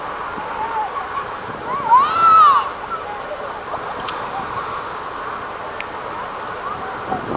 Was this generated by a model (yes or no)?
no